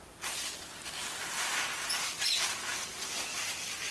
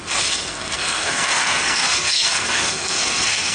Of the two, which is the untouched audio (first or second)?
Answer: first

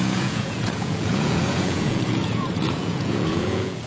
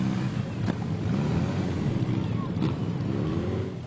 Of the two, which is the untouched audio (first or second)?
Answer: second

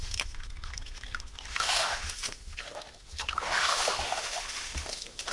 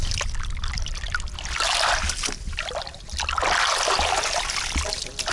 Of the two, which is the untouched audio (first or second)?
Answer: second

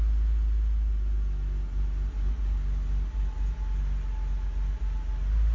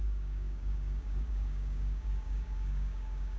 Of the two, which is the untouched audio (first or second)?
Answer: first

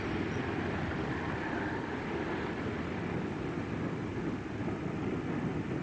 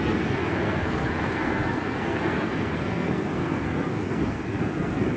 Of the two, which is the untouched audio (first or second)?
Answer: first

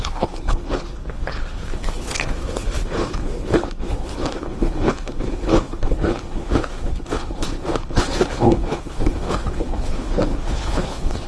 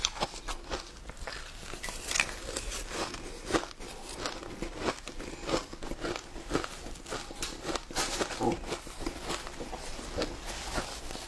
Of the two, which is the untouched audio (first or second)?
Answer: second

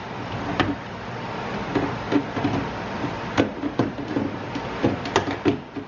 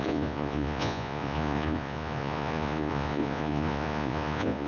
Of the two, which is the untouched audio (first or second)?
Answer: first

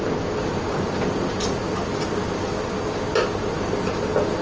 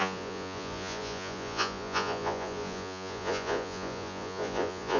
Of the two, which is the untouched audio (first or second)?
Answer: first